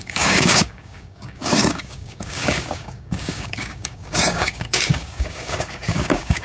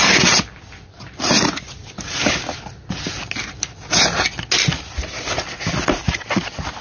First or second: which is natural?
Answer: second